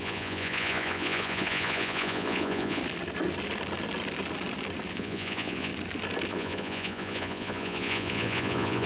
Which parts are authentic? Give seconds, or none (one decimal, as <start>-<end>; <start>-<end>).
2.8-4.9; 5.7-6.3